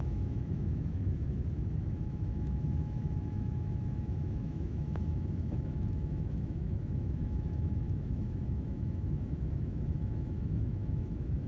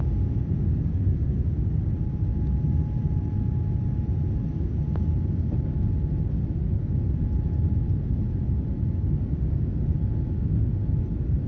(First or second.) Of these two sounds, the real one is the second